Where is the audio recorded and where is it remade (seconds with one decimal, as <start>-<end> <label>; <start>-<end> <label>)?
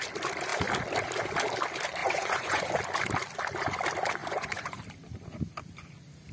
0.0-2.0 recorded; 2.0-2.7 remade; 2.7-4.2 recorded; 4.2-4.8 remade; 4.8-6.3 recorded